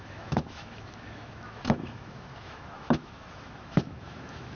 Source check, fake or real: fake